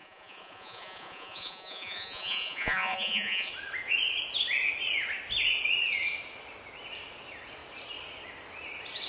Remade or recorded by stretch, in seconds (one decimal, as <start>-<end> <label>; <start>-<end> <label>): 0.0-3.5 remade; 3.5-9.1 recorded